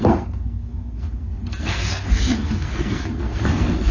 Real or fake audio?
fake